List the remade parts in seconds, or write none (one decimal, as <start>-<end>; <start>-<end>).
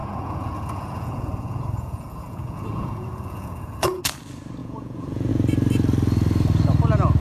0.0-4.0; 4.6-5.3